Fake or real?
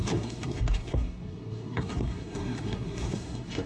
fake